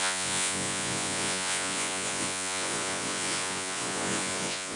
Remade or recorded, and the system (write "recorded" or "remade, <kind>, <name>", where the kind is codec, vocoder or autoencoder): remade, vocoder, Vocos